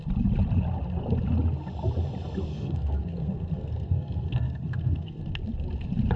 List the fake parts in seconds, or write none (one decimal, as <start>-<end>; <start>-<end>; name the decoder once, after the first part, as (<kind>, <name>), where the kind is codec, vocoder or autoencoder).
2.5-5.3 (codec, SNAC)